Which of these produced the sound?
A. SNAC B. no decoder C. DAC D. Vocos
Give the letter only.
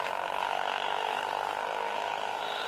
A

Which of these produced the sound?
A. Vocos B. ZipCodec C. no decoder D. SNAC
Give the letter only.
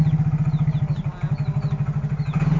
C